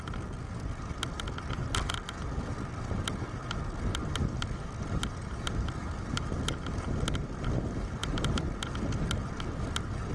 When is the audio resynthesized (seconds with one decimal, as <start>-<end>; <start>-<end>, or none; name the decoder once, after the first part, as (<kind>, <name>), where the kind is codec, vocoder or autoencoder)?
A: none